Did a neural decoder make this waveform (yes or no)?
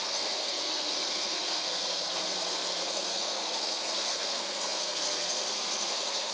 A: yes